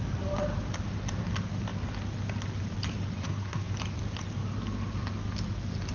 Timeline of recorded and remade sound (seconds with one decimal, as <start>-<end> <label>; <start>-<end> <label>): 0.0-3.2 recorded; 3.2-3.7 remade; 3.7-5.9 recorded